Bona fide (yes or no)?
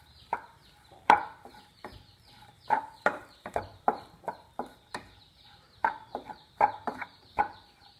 no